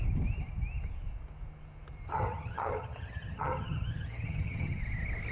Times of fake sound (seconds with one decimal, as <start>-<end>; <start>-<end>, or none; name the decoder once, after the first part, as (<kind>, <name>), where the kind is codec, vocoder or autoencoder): 2.1-4.8 (vocoder, HiFi-GAN)